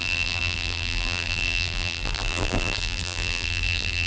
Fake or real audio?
fake